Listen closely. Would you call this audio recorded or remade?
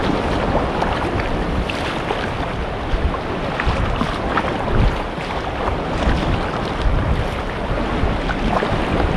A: recorded